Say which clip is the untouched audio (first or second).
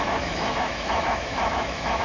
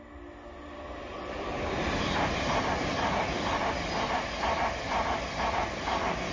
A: second